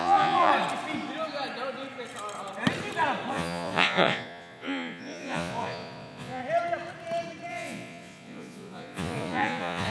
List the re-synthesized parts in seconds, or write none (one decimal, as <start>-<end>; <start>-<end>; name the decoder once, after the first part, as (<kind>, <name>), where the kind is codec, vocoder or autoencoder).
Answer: 0.0-0.5 (vocoder, Vocos); 3.3-6.4; 7.5-9.9